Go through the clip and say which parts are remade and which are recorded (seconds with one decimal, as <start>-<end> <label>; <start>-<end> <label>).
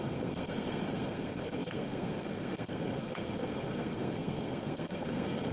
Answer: 0.0-5.5 remade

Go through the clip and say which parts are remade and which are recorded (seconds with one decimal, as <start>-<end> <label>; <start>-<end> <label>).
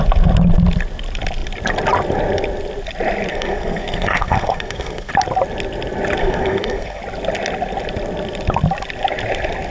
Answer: 0.0-3.3 recorded; 3.3-5.1 remade; 5.1-6.2 recorded; 6.2-7.0 remade; 7.0-9.7 recorded